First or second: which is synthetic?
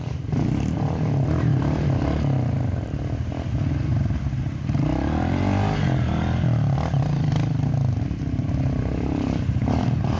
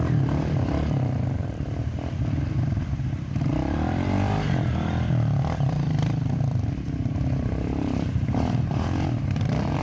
second